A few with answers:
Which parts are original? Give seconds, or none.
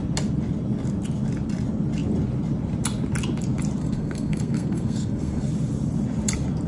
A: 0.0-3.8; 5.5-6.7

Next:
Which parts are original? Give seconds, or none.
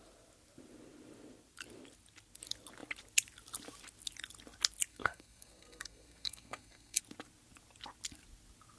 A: 0.0-4.9; 7.0-8.8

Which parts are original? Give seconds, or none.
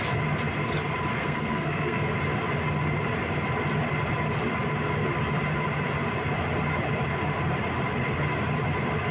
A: 0.0-1.1; 2.1-9.1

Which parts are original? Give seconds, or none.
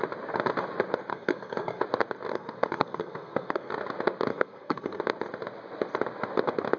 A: 0.0-1.1; 1.8-2.3; 3.7-4.3; 5.0-6.8